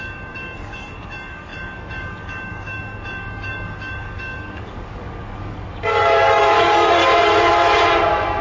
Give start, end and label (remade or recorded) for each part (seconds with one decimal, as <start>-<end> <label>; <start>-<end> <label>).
0.0-7.0 remade; 7.0-8.4 recorded